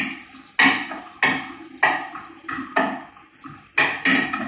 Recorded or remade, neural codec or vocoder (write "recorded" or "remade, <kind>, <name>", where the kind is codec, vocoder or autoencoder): recorded